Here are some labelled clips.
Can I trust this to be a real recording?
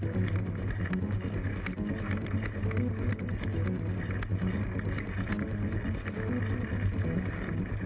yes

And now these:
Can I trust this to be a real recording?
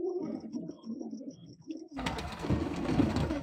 no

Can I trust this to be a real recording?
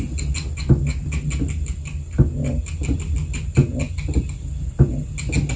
yes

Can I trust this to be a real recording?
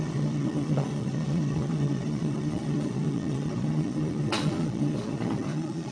no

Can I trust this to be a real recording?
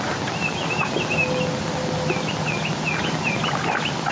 yes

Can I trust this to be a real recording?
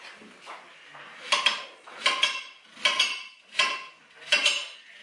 yes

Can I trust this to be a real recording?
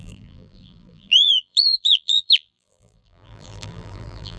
no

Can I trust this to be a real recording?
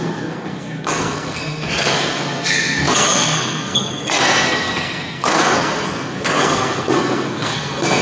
no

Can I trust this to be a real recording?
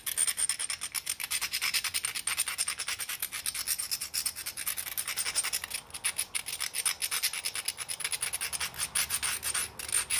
yes